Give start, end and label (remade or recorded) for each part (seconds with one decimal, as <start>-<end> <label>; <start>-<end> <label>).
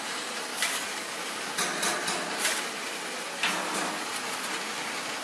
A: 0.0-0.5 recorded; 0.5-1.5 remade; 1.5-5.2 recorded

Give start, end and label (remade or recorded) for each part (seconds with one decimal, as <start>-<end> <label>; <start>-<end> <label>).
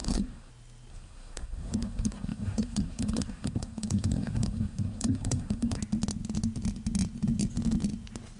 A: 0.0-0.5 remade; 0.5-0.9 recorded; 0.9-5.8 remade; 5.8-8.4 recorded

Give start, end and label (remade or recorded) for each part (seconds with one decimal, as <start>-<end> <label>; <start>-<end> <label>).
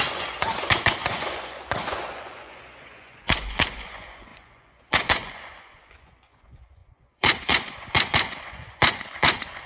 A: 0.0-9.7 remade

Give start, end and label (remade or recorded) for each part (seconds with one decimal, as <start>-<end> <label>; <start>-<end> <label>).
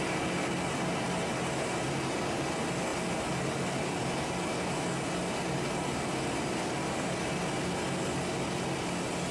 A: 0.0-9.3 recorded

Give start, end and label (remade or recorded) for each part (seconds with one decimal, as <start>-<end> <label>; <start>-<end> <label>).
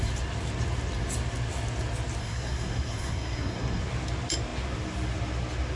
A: 0.0-2.2 recorded; 2.2-3.8 remade; 3.8-5.8 recorded